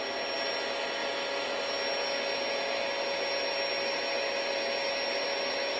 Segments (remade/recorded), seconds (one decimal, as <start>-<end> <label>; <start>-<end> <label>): 0.0-5.8 recorded